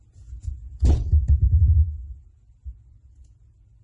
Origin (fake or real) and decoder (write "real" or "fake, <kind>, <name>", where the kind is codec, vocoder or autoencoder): fake, vocoder, Vocos